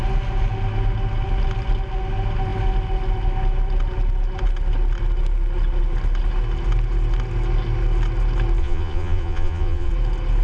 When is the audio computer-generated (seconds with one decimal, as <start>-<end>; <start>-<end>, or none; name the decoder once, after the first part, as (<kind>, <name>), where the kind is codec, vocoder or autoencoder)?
8.6-9.9 (vocoder, Vocos)